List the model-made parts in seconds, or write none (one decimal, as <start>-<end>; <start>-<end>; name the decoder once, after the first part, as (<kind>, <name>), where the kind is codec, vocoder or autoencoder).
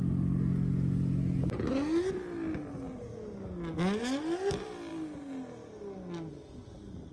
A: none